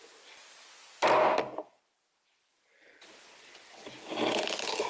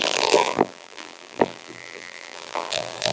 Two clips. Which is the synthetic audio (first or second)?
second